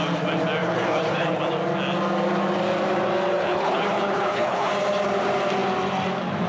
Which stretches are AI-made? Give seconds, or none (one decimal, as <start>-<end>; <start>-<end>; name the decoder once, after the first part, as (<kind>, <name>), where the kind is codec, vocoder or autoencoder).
0.6-1.4 (codec, HILCodec); 3.3-4.7

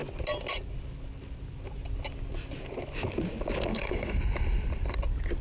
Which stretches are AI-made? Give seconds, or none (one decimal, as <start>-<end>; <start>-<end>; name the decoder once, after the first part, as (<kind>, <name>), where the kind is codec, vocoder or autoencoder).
3.7-4.2 (codec, HILCodec)

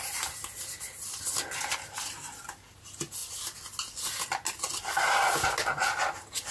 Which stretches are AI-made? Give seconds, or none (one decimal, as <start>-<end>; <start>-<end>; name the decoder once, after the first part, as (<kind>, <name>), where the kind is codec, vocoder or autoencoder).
none

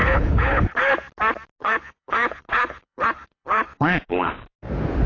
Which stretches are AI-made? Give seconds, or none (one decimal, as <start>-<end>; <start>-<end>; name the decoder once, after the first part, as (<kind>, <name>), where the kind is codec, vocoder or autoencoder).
0.0-0.9 (codec, HILCodec); 1.6-4.3

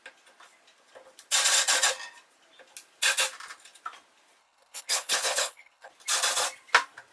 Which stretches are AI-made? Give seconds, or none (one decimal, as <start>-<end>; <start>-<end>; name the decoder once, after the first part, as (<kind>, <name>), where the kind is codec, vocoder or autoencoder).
4.4-5.9 (codec, HILCodec)